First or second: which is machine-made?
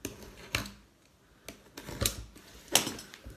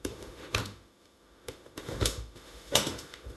second